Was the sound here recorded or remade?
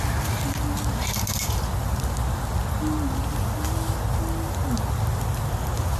remade